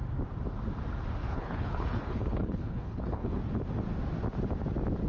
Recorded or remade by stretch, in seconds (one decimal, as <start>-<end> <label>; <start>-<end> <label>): 0.0-1.2 recorded; 1.2-3.4 remade; 3.4-5.1 recorded